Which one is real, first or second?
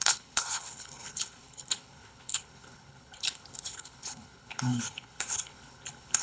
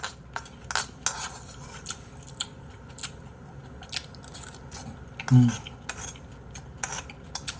second